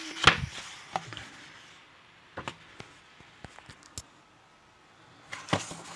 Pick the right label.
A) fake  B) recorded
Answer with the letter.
B